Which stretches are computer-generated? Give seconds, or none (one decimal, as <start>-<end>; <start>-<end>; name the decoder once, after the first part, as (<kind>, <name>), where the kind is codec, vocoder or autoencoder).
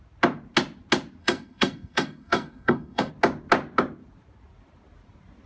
1.2-3.1 (codec, SNAC)